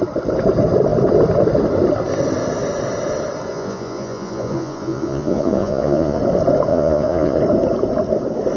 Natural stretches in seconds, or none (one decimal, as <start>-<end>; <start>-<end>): 0.0-3.5; 6.2-6.7; 7.4-8.6